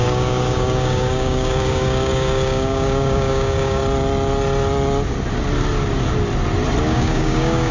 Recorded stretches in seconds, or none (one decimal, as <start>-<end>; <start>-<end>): 3.8-6.8